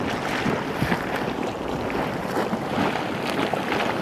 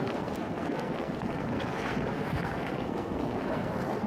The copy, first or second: second